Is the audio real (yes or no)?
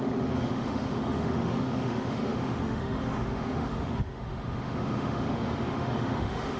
no